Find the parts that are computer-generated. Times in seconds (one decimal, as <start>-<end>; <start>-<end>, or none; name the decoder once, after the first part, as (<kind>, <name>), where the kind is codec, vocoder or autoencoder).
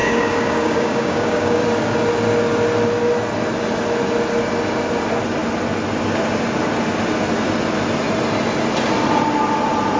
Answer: 0.0-1.6 (codec, DAC)